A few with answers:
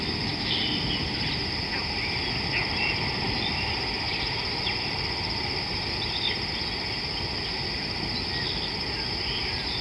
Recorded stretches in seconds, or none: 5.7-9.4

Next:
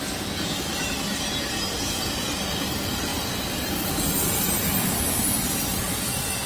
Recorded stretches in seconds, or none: 0.0-6.5

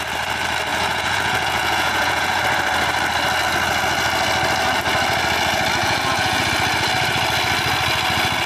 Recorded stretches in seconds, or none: 0.0-0.7; 2.4-5.8; 6.5-8.5